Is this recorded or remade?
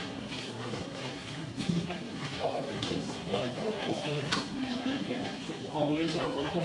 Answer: remade